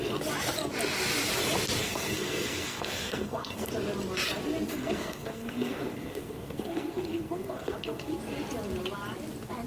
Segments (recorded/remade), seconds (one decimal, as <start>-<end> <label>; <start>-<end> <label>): 0.0-1.8 recorded; 1.8-3.7 remade; 3.7-4.7 recorded; 4.7-8.1 remade; 8.1-9.7 recorded